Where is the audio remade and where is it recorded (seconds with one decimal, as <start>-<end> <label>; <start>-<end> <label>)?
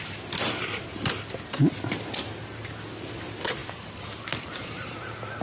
0.0-3.6 recorded; 3.6-4.9 remade; 4.9-5.4 recorded